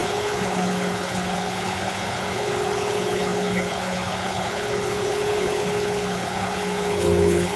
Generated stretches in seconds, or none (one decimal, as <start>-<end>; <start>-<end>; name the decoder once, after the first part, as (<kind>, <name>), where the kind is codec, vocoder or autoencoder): 0.0-7.6 (codec, HILCodec)